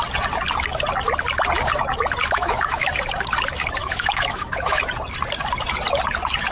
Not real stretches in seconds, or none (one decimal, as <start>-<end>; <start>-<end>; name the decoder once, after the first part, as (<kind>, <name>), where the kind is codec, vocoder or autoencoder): 2.2-2.9 (autoencoder, DAC-VAE); 3.8-4.8